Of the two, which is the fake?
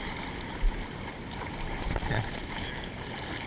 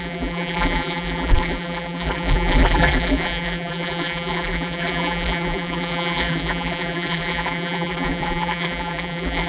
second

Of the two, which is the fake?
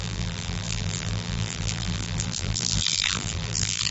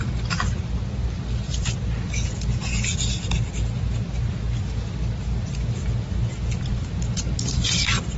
first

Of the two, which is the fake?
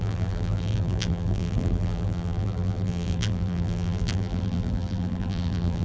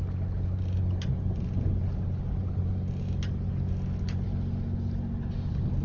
first